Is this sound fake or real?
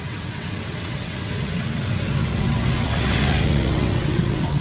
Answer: fake